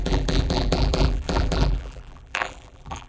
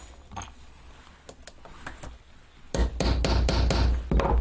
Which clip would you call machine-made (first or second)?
first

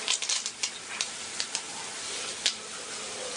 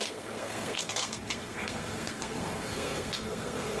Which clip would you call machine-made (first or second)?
second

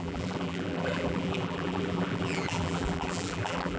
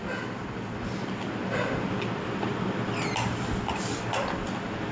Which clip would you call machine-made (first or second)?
first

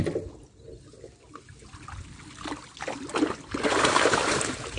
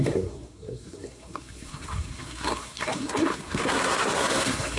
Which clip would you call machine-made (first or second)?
second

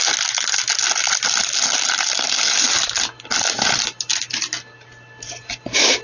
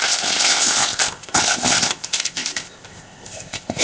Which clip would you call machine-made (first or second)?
second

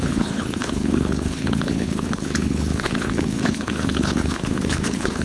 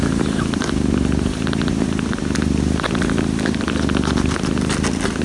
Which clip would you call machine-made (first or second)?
first